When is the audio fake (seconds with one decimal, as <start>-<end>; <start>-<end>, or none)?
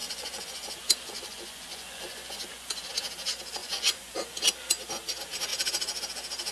0.0-2.9; 3.6-4.1